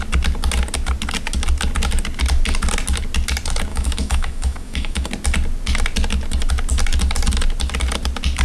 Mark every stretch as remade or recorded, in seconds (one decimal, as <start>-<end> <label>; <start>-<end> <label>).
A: 0.0-3.7 recorded; 3.7-5.1 remade; 5.1-8.4 recorded